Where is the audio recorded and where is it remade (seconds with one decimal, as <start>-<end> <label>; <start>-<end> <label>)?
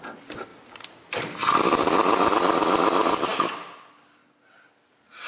0.0-5.3 recorded